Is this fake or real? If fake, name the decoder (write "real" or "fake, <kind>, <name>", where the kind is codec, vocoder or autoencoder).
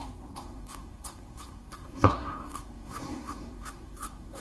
fake, codec, SNAC